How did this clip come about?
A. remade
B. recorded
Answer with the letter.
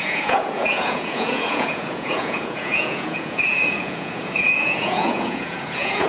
A